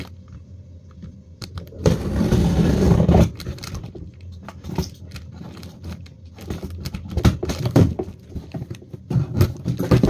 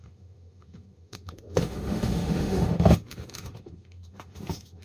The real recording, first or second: first